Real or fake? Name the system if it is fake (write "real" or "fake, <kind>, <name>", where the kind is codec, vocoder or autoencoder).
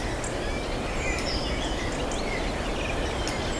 real